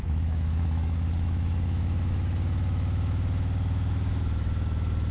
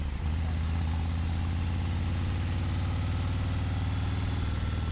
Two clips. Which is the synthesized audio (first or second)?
first